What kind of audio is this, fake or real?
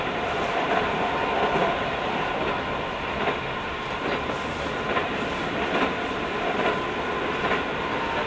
real